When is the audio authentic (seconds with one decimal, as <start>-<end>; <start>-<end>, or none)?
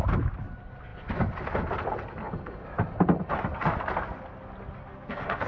0.0-4.9